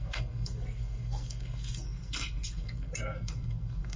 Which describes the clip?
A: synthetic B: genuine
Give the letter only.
A